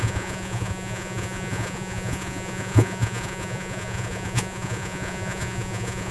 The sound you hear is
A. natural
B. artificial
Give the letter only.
B